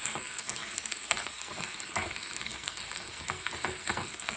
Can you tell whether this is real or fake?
fake